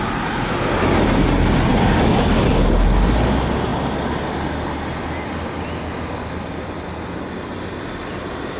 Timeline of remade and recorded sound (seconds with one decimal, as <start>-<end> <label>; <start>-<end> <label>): 0.0-8.6 recorded